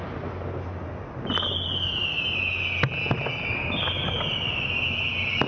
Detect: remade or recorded recorded